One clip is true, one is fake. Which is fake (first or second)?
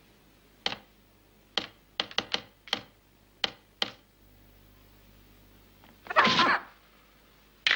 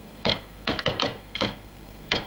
second